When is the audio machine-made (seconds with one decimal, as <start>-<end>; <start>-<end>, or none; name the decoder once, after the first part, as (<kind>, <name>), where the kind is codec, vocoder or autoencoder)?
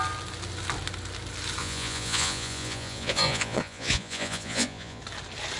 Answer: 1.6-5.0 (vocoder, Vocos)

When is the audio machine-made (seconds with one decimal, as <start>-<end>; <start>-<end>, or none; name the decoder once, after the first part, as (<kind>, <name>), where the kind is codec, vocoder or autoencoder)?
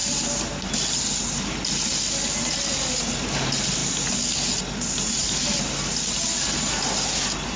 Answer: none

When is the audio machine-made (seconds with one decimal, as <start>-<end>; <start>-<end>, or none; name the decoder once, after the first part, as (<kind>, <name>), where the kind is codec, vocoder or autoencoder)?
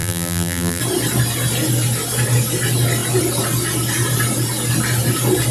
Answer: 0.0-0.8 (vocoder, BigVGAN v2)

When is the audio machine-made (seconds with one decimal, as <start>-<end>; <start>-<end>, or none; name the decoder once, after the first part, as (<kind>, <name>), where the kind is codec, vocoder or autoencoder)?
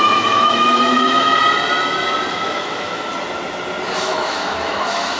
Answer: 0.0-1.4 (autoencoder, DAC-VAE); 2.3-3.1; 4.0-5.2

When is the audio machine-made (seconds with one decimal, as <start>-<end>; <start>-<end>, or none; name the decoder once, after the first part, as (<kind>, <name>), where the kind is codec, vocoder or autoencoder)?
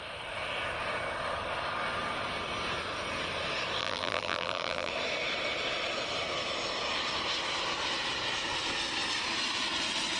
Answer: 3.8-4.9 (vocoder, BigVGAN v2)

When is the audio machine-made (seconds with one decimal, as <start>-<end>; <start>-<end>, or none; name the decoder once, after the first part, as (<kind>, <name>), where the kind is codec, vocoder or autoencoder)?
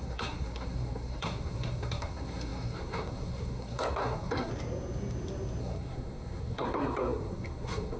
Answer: 0.0-4.5 (codec, SNAC); 5.6-8.0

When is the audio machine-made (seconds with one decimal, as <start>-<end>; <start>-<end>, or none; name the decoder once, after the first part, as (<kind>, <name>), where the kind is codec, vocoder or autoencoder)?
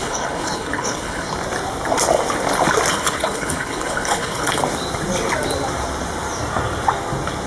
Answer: 0.0-1.3 (codec, HILCodec); 2.9-4.6